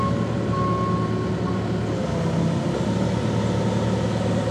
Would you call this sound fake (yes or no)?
no